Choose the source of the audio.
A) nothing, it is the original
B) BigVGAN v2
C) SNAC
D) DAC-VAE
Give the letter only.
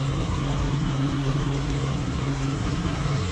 C